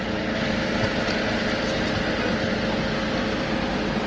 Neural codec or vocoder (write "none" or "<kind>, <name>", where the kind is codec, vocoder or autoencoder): none